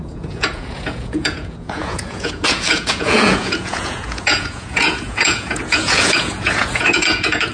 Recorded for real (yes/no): no